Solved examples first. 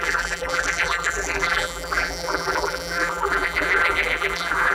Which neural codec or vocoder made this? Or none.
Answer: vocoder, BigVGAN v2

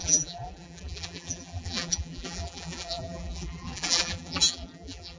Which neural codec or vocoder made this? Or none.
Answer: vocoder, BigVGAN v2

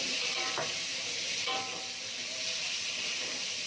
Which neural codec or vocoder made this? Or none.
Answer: vocoder, BigVGAN v2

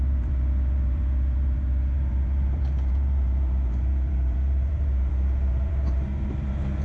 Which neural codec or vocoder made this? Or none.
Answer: vocoder, BigVGAN v2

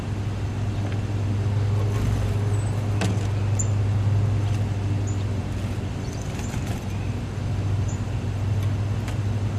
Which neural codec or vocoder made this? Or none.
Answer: vocoder, BigVGAN v2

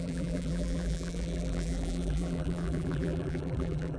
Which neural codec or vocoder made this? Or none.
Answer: vocoder, BigVGAN v2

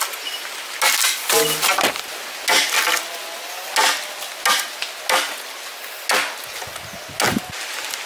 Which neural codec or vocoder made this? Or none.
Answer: none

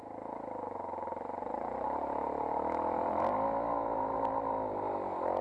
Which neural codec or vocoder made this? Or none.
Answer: none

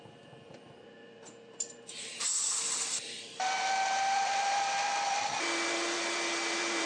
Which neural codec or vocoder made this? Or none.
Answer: vocoder, BigVGAN v2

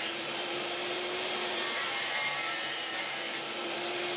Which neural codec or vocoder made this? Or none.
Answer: vocoder, BigVGAN v2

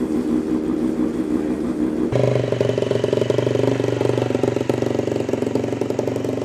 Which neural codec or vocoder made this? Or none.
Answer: none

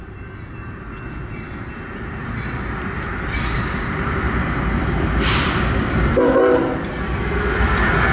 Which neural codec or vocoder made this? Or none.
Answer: vocoder, BigVGAN v2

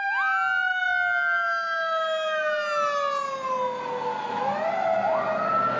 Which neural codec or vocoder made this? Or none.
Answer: none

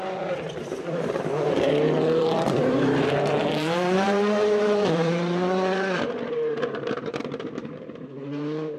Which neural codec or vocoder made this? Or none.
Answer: vocoder, BigVGAN v2